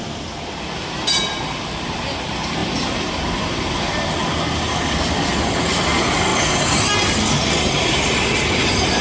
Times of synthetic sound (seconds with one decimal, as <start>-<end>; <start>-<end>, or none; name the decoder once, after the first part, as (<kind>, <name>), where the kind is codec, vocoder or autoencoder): none